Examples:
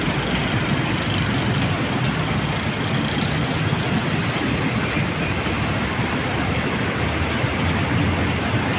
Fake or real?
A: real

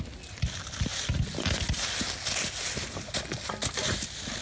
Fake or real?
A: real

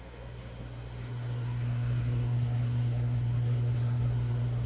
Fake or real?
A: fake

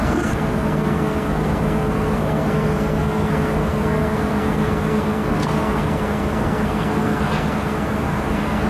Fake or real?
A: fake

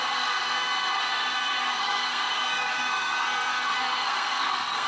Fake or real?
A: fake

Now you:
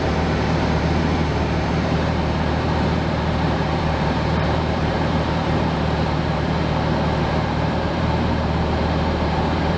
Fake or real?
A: fake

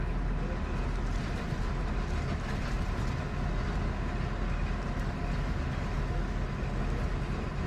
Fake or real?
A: real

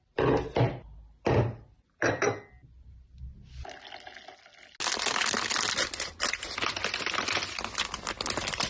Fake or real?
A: real